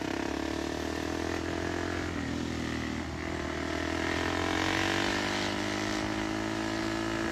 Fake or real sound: real